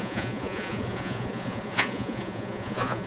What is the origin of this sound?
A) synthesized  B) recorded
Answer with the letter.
A